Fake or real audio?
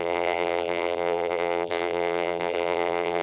fake